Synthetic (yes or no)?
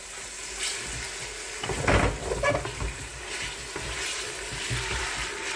no